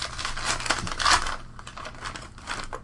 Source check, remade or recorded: recorded